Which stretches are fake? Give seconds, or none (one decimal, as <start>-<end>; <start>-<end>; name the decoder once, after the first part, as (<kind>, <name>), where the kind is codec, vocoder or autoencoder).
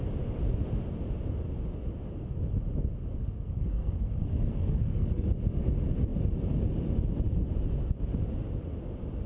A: 3.2-5.3 (codec, SNAC)